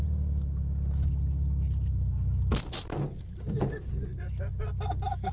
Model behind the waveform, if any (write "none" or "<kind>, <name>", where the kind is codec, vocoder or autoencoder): none